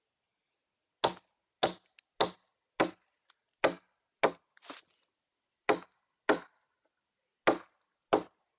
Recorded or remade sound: recorded